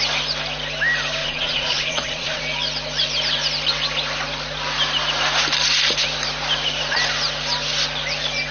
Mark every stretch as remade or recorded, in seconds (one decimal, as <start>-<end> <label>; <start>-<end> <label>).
0.0-1.2 recorded; 1.2-2.4 remade; 2.4-8.5 recorded